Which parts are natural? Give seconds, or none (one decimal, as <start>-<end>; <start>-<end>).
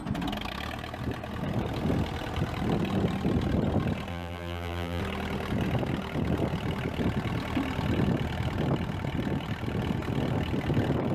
0.0-4.1; 5.0-11.1